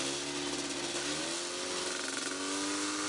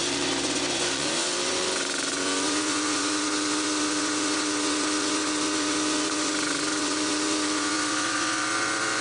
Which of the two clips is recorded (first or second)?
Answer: first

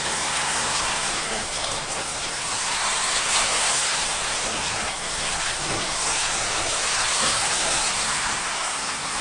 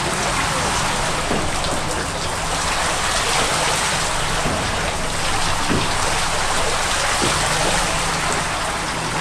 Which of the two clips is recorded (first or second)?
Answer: second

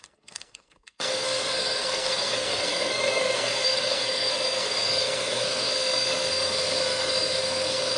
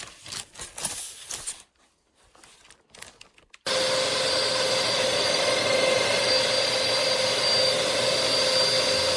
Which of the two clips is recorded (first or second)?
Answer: second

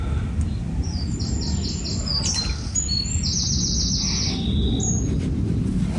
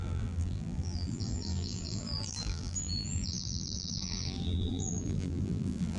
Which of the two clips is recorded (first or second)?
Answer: first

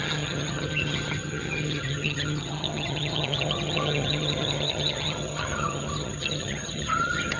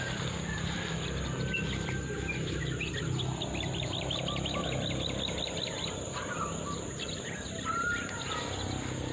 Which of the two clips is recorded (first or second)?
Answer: second